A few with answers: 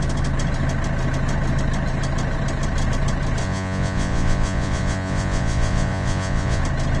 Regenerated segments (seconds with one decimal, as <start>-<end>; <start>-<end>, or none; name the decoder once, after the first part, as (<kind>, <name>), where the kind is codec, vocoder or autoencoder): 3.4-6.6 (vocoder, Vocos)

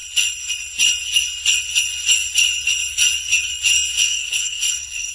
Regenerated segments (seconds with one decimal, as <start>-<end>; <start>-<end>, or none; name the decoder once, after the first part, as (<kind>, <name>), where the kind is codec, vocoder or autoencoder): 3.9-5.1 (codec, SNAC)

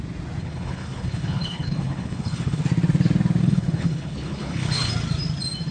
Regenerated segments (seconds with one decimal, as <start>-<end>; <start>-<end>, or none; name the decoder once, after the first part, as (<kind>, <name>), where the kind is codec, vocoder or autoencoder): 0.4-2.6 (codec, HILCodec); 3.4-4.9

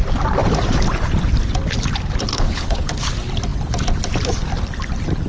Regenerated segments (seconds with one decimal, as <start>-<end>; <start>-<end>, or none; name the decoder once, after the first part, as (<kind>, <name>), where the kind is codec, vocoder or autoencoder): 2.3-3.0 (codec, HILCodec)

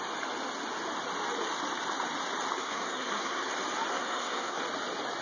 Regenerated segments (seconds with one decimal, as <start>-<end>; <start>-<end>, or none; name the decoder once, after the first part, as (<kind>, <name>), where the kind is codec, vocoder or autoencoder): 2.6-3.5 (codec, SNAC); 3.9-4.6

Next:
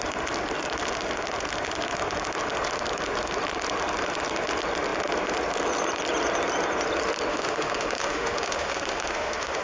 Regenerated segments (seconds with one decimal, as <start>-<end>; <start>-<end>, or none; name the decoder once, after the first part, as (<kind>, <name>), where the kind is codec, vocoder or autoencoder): 7.3-9.6 (autoencoder, DAC-VAE)

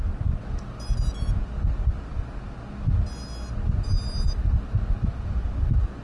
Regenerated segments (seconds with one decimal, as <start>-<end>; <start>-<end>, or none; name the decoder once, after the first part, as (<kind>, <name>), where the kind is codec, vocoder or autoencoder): none